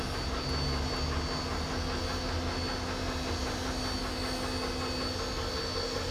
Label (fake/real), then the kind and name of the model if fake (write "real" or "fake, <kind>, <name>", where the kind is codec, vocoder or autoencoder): real